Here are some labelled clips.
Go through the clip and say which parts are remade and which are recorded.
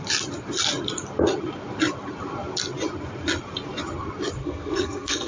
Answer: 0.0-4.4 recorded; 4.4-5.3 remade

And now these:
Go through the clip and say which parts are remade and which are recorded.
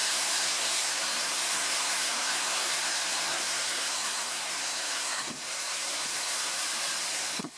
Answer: 0.0-6.5 remade; 6.5-7.1 recorded; 7.1-7.6 remade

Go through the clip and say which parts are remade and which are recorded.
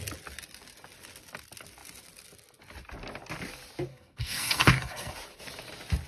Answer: 0.0-3.9 recorded; 3.9-5.1 remade; 5.1-6.1 recorded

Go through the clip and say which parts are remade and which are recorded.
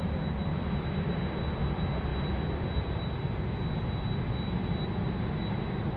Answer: 0.0-6.0 recorded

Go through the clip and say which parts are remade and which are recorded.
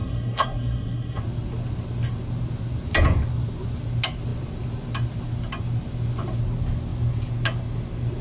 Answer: 0.0-1.2 remade; 1.2-8.2 recorded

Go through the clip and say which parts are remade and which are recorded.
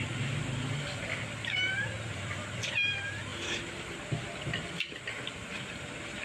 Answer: 0.0-6.2 recorded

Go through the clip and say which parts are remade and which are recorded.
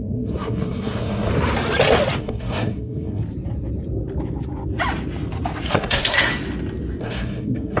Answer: 0.0-1.3 remade; 1.3-2.2 recorded; 2.2-3.2 remade; 3.2-5.7 recorded; 5.7-6.3 remade; 6.3-7.0 recorded; 7.0-7.8 remade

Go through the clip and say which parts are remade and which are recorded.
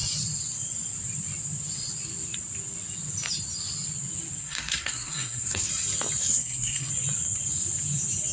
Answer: 0.0-4.4 recorded; 4.4-5.7 remade; 5.7-6.2 recorded; 6.2-6.9 remade; 6.9-8.3 recorded